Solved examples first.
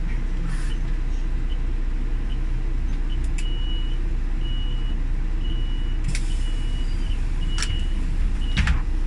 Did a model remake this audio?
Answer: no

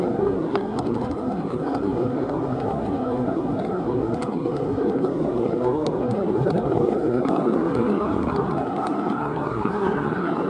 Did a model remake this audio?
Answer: yes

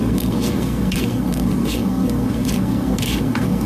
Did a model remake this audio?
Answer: yes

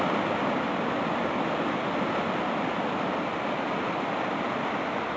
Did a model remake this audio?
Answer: no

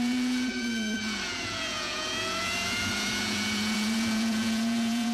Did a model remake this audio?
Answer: yes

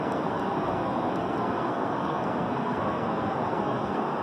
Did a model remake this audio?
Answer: yes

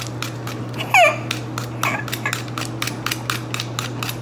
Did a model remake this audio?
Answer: no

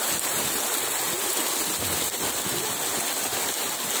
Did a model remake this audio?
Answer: no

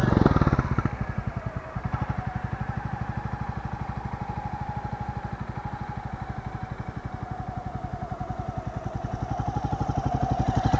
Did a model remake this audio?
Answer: no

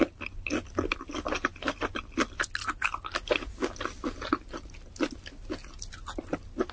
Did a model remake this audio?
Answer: no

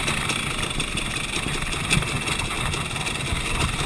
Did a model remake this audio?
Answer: no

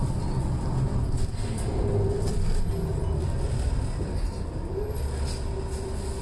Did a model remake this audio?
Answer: no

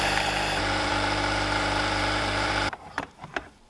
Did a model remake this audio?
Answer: yes